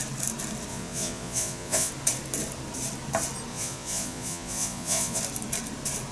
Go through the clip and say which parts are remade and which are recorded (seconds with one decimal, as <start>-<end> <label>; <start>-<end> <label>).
0.0-0.7 recorded; 0.7-1.9 remade; 1.9-3.5 recorded; 3.5-5.2 remade; 5.2-6.1 recorded